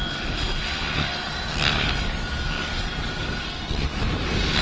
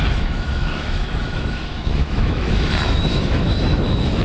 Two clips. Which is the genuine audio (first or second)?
first